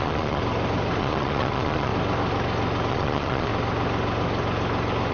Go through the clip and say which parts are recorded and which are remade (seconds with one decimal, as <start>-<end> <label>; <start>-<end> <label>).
0.0-0.4 remade; 0.4-1.0 recorded; 1.0-1.9 remade; 1.9-2.9 recorded; 2.9-3.5 remade; 3.5-5.1 recorded